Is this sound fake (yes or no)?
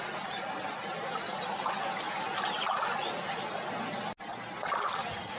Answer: no